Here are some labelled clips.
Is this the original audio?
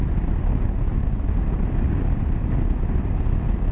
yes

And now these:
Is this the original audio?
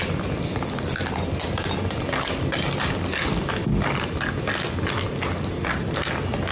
yes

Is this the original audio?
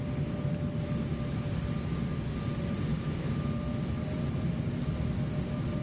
yes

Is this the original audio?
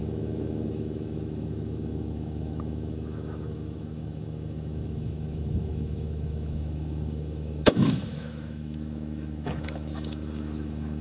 no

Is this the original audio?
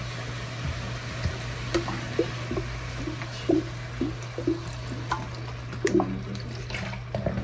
yes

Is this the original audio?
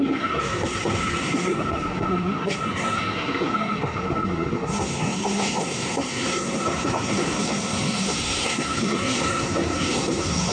no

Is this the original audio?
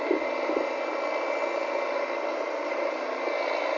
yes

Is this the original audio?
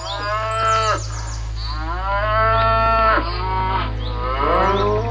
yes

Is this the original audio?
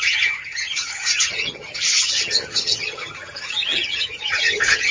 no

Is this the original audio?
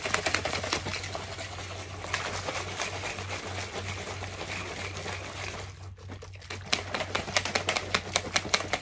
yes